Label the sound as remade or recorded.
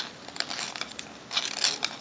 recorded